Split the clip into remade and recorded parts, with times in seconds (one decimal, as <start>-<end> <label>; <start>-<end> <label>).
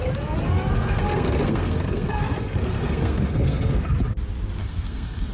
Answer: 0.0-0.7 recorded; 0.7-3.9 remade; 3.9-4.6 recorded; 4.6-5.3 remade